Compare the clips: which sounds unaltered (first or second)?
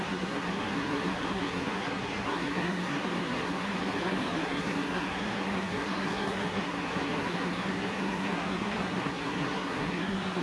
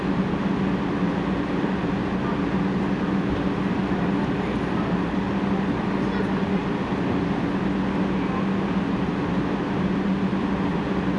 second